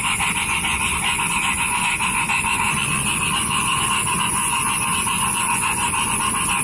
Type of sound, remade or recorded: remade